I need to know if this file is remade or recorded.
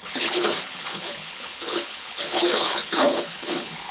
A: remade